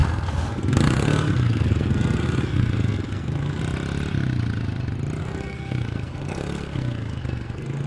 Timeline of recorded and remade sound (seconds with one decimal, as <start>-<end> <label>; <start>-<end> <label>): 0.0-3.6 remade; 3.6-5.2 recorded; 5.2-7.9 remade